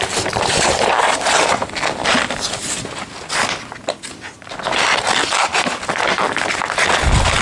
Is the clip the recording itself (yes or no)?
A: yes